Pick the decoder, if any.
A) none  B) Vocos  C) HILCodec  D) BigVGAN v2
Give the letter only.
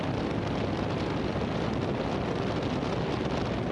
A